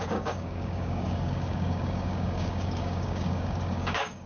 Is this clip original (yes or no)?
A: no